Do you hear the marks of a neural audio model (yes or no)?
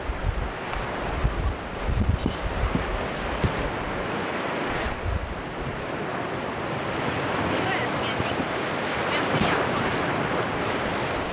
no